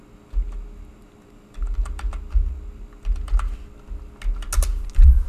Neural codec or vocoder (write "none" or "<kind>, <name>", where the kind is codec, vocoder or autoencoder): none